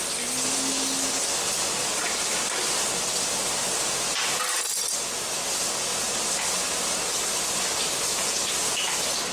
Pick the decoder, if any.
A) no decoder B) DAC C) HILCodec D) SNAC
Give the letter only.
A